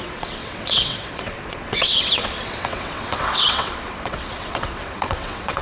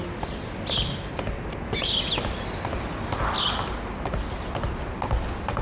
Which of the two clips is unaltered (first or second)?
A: second